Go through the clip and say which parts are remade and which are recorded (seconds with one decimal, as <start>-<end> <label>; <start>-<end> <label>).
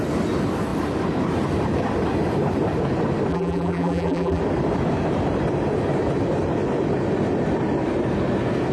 0.0-3.3 recorded; 3.3-4.4 remade; 4.4-8.7 recorded